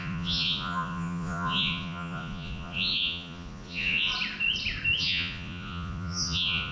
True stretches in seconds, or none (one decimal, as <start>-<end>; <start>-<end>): 4.1-5.0